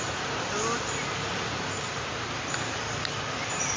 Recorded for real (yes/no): yes